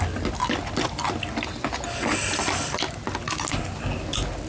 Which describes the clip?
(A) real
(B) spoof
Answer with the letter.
A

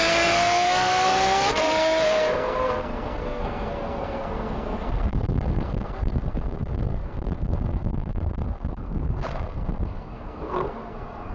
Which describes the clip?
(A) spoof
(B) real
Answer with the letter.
A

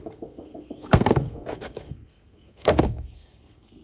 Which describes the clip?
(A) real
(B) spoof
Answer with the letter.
B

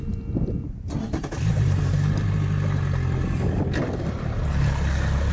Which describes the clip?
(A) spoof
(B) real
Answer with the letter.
B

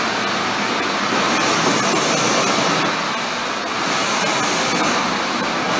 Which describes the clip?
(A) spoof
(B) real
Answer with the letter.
B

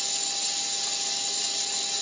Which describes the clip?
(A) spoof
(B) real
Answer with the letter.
B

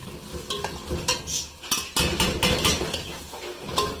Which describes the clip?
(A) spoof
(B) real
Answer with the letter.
B